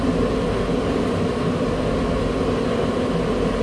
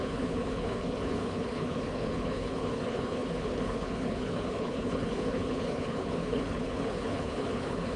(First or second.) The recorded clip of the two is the first